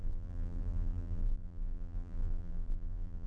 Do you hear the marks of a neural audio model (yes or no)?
yes